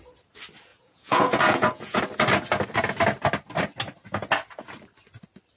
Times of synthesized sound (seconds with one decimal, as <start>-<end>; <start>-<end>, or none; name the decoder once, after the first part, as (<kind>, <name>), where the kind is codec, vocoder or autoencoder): 0.7-2.0 (vocoder, Vocos)